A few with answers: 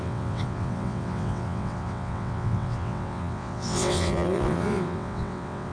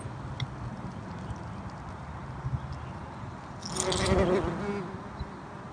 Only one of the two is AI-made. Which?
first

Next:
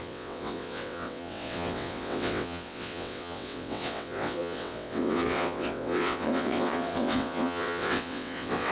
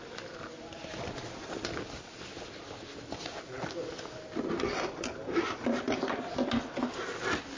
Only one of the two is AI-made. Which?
first